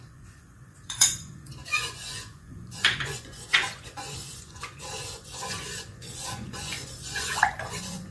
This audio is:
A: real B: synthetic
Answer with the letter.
B